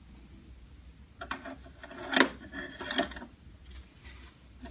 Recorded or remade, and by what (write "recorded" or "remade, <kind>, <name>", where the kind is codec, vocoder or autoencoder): recorded